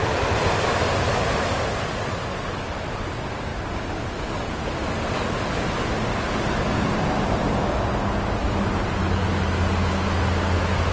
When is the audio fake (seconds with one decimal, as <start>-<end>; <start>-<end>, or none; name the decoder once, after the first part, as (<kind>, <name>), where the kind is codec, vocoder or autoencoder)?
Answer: none